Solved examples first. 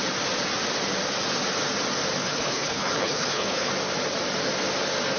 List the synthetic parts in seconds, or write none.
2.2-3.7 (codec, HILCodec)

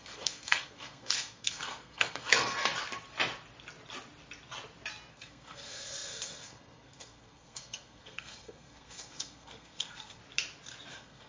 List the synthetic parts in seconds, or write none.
0.0-2.7 (codec, SNAC); 5.1-10.2; 10.9-11.3

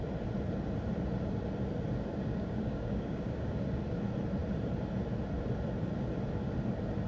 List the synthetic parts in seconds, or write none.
2.1-3.8 (codec, DAC)

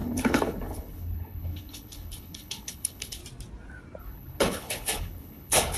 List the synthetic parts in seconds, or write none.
0.0-3.2 (codec, HILCodec); 4.0-5.8